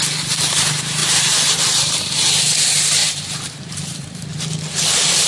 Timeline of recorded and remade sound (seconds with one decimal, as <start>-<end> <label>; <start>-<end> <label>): 0.0-5.3 remade

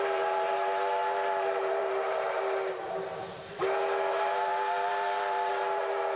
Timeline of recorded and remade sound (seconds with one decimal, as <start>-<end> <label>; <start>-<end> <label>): 0.0-3.1 remade; 3.1-4.1 recorded; 4.1-6.2 remade

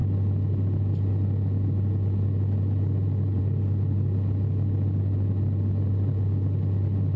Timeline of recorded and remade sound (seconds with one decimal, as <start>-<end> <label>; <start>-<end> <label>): 0.0-7.2 recorded